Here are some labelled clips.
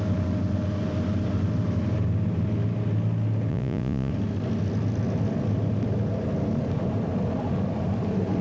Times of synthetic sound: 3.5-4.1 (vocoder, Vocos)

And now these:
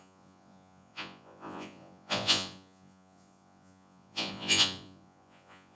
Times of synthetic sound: 0.0-5.7 (vocoder, Vocos)

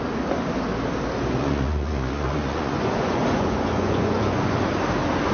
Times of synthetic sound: 1.4-4.6 (vocoder, Vocos)

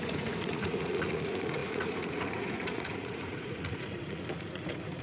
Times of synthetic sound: 0.0-5.0 (vocoder, Vocos)

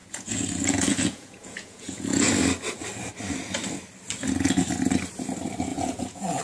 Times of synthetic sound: 0.0-2.3 (vocoder, Vocos); 5.7-6.4

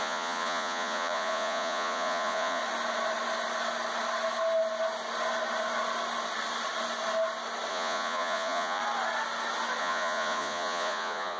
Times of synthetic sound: 0.0-2.6 (vocoder, Vocos); 7.7-8.8; 9.8-11.4